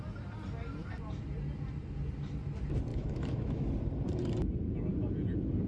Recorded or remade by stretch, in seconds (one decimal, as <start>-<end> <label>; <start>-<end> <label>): 0.0-2.9 recorded; 2.9-3.7 remade; 3.7-5.7 recorded